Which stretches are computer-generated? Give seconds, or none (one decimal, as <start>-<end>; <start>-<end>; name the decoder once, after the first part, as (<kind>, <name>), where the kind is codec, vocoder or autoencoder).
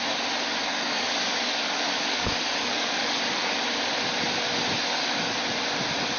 0.7-3.5 (codec, DAC); 4.9-5.4